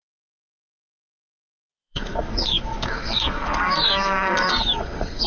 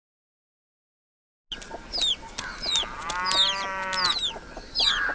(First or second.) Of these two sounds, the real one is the second